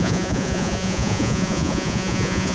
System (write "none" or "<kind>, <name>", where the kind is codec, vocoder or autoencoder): vocoder, Vocos